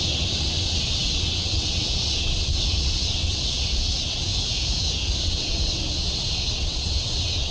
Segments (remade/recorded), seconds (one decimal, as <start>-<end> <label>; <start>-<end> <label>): 0.0-4.3 remade; 4.3-5.2 recorded; 5.2-7.5 remade